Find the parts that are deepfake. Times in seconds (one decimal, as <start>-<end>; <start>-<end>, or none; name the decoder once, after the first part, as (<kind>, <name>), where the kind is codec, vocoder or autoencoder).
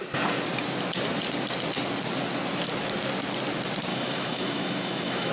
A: 3.9-5.3 (autoencoder, DAC-VAE)